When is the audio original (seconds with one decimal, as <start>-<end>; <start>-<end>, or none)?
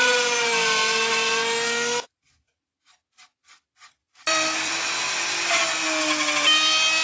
0.0-4.0; 4.7-7.0